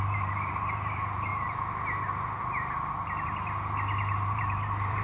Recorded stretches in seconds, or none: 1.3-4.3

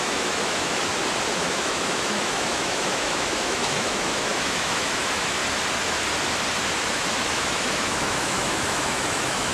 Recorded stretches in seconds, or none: 0.9-1.4; 5.4-6.9

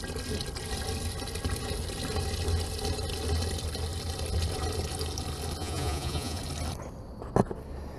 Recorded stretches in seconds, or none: 0.0-5.6; 6.4-8.0

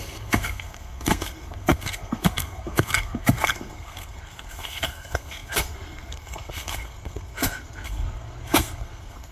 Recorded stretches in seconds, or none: none

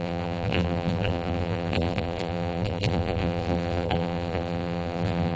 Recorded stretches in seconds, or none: none

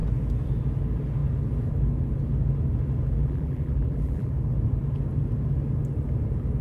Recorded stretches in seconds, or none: 0.0-3.2; 4.3-6.6

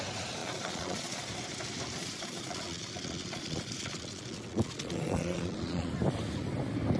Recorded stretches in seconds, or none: 0.0-0.4; 1.3-2.0; 5.9-7.0

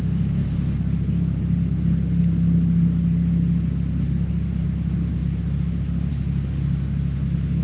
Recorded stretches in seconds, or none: 0.0-7.6